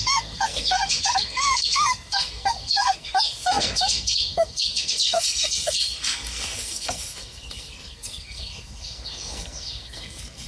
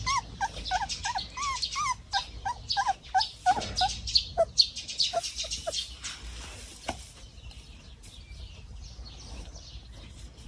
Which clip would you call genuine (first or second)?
second